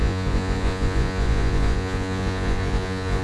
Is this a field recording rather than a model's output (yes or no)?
no